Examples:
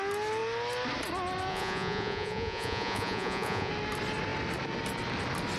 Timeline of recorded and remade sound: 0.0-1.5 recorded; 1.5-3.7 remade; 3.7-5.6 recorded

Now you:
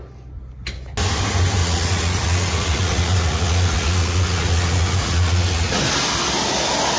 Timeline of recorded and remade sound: 0.0-1.6 recorded; 1.6-5.8 remade; 5.8-7.0 recorded

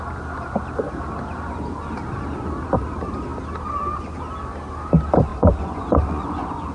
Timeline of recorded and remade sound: 0.0-5.3 recorded; 5.3-6.7 remade

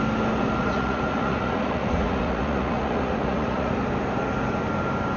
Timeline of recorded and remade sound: 0.0-0.6 recorded; 0.6-3.7 remade; 3.7-5.2 recorded

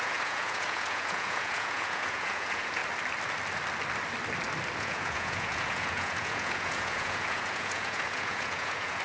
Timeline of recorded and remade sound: 0.0-2.8 remade; 2.8-4.8 recorded; 4.8-9.0 remade

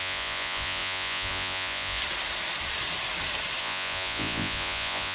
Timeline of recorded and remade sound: 0.0-2.0 remade; 2.0-3.6 recorded; 3.6-5.1 remade